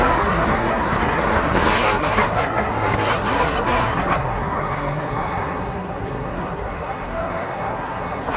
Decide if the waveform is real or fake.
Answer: fake